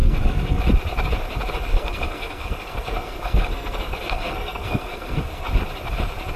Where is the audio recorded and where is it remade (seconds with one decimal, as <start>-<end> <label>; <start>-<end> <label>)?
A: 0.0-0.6 remade; 0.6-1.7 recorded; 1.7-5.5 remade; 5.5-6.4 recorded